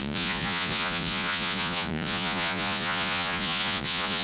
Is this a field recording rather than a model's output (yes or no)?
no